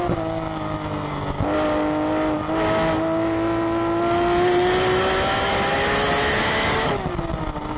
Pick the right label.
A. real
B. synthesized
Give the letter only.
A